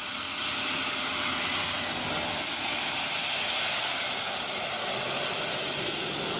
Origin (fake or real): real